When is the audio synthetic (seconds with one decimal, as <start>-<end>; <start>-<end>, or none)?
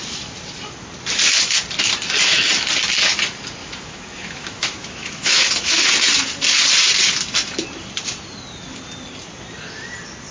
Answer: 3.6-5.8